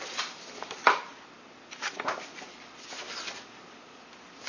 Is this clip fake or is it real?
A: fake